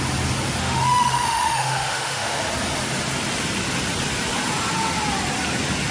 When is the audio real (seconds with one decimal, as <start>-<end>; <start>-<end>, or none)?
0.0-0.6; 2.4-5.9